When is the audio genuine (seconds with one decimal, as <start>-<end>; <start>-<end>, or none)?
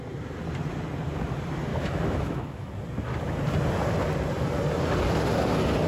0.0-1.7; 2.7-5.9